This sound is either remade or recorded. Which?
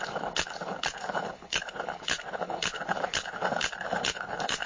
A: remade